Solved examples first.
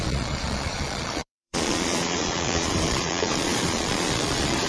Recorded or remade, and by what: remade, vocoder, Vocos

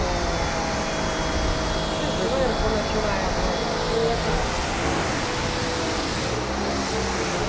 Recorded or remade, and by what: recorded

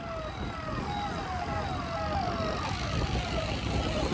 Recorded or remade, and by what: recorded